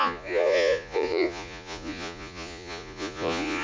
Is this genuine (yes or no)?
no